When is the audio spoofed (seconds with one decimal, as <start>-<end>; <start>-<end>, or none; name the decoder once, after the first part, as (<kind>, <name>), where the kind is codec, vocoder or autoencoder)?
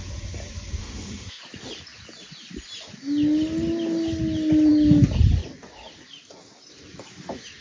0.8-1.4 (autoencoder, DAC-VAE)